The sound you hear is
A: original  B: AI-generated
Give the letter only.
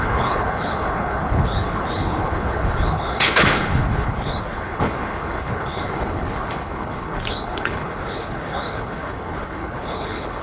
B